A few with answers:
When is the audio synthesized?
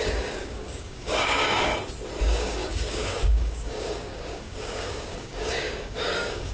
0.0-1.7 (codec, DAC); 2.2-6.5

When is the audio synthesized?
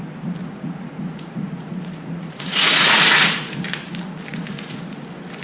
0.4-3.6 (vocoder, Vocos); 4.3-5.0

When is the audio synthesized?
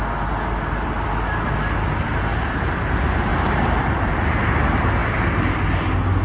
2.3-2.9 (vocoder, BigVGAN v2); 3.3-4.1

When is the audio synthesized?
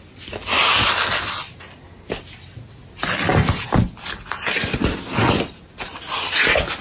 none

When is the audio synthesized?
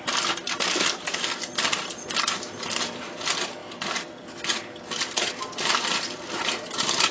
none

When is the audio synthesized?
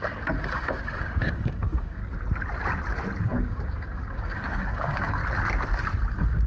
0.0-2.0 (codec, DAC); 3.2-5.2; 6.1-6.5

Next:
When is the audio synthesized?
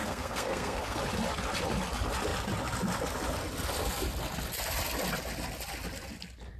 0.0-1.0 (codec, SNAC)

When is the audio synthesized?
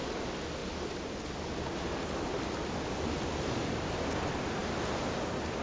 none